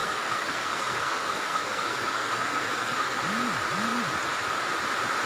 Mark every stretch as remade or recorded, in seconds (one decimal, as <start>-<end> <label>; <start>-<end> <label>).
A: 0.0-3.2 remade; 3.2-5.3 recorded